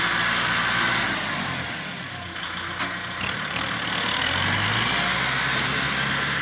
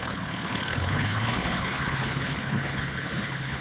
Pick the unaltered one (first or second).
first